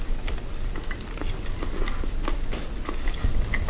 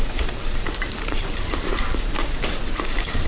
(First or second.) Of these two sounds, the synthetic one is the second